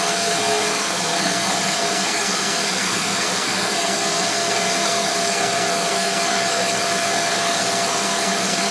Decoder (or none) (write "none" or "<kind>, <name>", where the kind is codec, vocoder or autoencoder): codec, SNAC